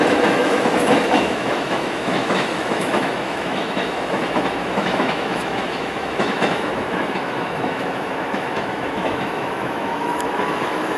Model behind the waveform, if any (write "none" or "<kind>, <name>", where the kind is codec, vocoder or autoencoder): autoencoder, DAC-VAE